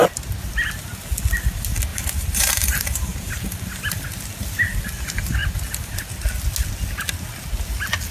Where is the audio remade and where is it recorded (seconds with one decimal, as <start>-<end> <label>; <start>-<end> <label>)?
0.0-1.9 recorded; 1.9-3.4 remade; 3.4-8.1 recorded